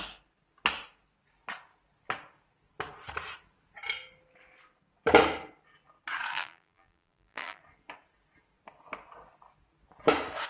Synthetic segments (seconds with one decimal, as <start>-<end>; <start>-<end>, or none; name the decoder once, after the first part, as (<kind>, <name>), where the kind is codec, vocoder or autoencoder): 6.3-7.6 (vocoder, BigVGAN v2)